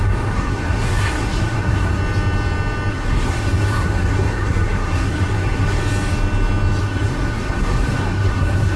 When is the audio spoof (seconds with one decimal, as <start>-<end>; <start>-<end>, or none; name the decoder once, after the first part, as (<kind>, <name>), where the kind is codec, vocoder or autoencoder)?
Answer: 0.0-2.0 (codec, SNAC); 2.9-5.8; 6.8-8.8